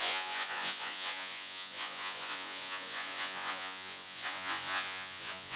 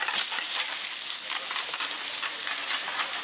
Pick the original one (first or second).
second